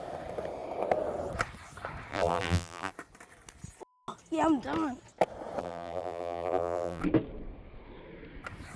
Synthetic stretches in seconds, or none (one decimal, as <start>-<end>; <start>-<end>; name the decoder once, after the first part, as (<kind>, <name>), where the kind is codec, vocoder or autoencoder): 2.1-2.9 (vocoder, BigVGAN v2); 5.6-7.0